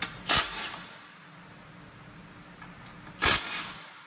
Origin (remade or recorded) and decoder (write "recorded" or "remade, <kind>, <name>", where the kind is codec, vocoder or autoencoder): recorded